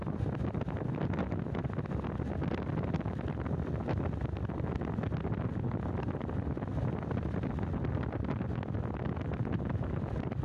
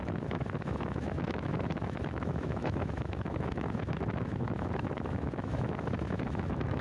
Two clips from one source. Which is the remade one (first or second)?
second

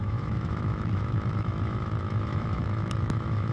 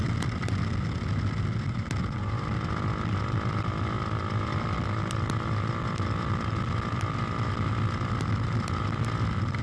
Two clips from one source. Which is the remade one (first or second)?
first